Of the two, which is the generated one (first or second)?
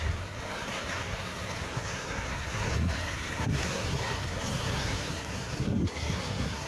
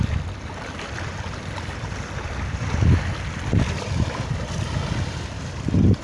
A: first